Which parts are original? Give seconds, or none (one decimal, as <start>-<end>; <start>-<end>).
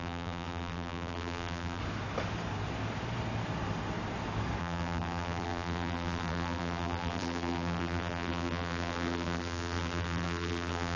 1.8-4.6